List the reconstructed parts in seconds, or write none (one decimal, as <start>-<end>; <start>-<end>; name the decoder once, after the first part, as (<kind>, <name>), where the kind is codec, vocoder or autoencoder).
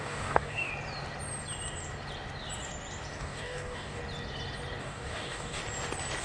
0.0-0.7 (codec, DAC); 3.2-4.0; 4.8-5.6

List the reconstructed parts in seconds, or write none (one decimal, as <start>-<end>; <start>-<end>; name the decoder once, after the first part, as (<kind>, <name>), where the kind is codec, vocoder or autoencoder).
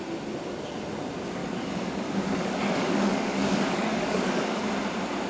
1.4-4.6 (codec, DAC)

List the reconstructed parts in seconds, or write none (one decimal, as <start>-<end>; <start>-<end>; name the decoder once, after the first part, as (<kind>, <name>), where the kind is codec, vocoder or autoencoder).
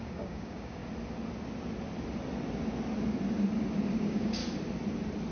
0.0-0.8 (codec, DAC); 4.0-4.4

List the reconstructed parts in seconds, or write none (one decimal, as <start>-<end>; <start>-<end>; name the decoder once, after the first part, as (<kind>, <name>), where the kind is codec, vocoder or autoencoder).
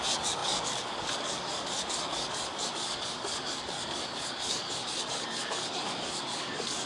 0.0-6.9 (codec, DAC)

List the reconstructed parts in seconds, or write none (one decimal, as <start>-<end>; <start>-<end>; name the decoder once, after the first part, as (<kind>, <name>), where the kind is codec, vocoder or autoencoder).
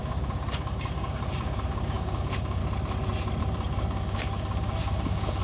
0.0-2.6 (codec, DAC); 3.4-5.4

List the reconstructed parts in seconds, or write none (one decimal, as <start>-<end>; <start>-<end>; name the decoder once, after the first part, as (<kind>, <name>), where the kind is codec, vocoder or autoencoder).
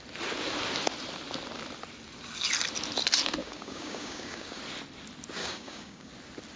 3.4-4.6 (codec, DAC); 5.4-6.1